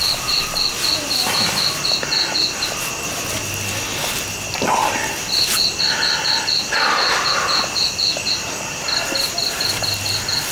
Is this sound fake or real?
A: real